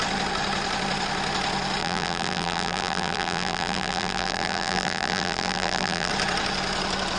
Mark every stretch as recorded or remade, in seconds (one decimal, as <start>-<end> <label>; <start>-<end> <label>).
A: 0.0-1.8 recorded; 1.8-6.1 remade; 6.1-7.2 recorded